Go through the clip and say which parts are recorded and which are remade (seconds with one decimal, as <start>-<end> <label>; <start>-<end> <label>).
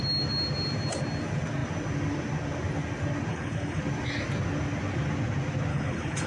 0.0-3.3 recorded; 3.3-3.8 remade; 3.8-5.7 recorded; 5.7-6.3 remade